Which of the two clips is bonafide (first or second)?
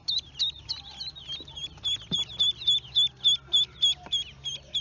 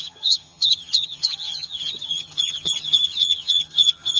first